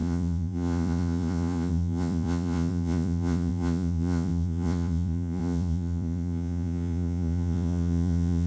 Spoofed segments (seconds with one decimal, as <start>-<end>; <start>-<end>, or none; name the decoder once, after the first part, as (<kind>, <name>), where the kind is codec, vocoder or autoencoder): 0.0-8.5 (vocoder, Vocos)